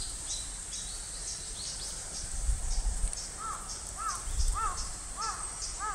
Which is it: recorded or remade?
remade